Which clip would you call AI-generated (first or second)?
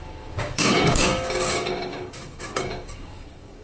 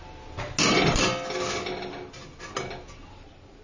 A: first